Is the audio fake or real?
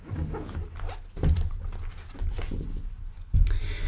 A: real